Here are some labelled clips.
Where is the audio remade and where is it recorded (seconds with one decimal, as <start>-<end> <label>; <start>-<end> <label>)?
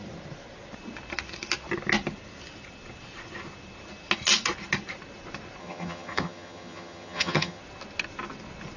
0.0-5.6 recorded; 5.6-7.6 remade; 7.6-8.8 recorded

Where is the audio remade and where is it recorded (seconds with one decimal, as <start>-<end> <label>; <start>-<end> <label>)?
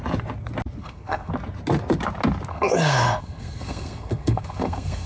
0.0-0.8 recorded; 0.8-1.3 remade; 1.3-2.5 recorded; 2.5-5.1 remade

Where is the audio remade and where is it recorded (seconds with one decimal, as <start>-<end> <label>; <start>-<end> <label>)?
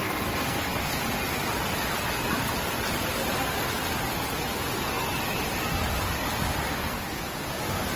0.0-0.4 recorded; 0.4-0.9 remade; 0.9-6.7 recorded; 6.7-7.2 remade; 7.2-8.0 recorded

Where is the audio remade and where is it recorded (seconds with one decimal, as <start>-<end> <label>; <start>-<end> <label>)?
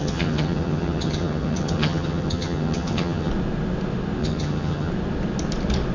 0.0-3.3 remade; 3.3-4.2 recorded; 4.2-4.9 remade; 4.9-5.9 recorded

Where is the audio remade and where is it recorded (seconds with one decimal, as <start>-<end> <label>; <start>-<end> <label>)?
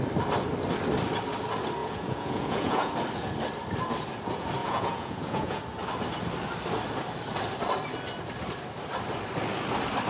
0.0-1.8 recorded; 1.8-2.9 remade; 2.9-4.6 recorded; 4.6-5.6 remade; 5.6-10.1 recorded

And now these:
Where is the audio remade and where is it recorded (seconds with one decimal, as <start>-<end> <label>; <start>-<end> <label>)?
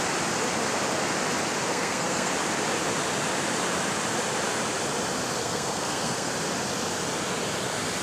0.0-1.7 recorded; 1.7-2.3 remade; 2.3-5.4 recorded; 5.4-6.3 remade; 6.3-8.0 recorded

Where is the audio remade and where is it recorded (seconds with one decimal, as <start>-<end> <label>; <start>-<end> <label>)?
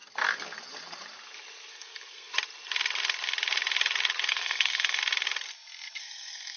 0.0-1.7 recorded; 1.7-2.3 remade; 2.3-4.3 recorded; 4.3-5.0 remade; 5.0-6.0 recorded; 6.0-6.6 remade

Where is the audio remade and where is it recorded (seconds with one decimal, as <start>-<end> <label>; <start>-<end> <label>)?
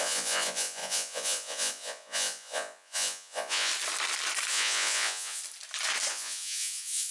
0.0-3.7 remade; 3.7-4.5 recorded; 4.5-5.4 remade; 5.4-6.1 recorded; 6.1-7.1 remade